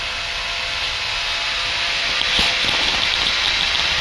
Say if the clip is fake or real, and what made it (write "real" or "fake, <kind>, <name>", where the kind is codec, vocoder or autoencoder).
real